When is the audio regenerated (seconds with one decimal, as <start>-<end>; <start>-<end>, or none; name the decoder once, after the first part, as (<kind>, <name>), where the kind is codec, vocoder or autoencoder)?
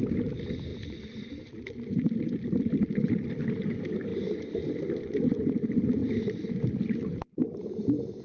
0.0-4.1 (vocoder, BigVGAN v2); 5.4-8.2